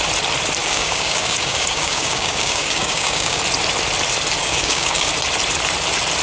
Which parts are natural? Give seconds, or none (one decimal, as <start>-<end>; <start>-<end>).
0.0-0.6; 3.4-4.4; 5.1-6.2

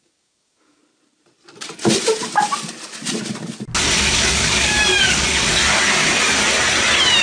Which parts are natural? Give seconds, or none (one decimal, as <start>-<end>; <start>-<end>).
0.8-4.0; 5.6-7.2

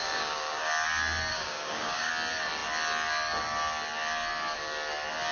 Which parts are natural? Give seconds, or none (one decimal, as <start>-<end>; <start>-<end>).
0.7-1.3; 2.1-5.3

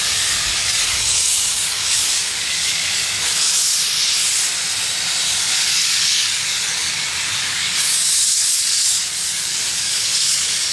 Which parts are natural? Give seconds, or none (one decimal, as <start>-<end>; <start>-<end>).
3.6-5.3

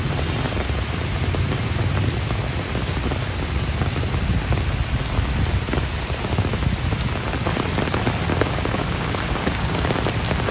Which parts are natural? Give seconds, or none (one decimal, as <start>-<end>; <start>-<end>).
0.0-8.3; 9.9-10.5

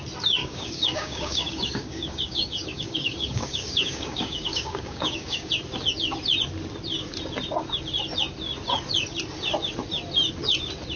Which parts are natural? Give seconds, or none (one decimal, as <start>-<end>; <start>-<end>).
0.0-0.4; 5.5-11.0

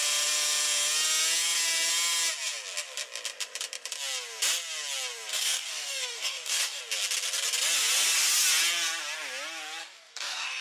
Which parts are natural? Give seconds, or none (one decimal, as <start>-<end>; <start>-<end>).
0.0-5.3; 6.8-9.8